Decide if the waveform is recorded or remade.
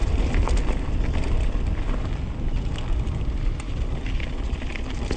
recorded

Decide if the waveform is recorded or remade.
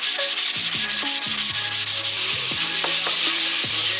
recorded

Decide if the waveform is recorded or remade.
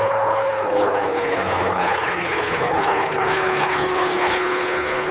remade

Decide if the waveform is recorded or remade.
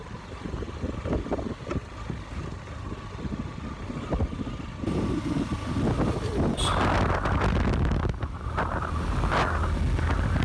recorded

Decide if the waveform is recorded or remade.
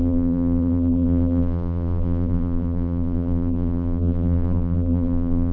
remade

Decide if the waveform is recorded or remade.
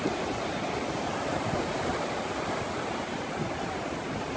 recorded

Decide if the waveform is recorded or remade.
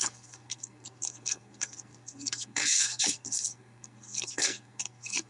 remade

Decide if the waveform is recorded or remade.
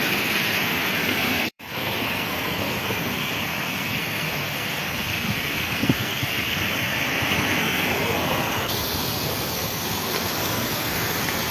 remade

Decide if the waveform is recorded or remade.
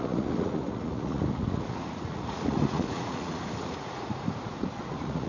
remade